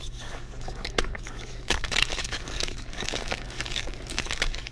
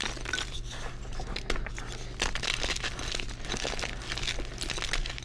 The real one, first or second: second